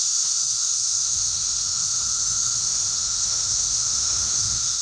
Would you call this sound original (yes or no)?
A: no